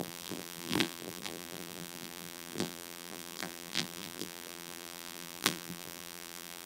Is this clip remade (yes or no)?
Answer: yes